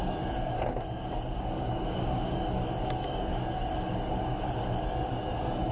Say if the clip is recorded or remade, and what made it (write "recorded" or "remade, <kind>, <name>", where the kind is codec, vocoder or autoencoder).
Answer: remade, codec, DAC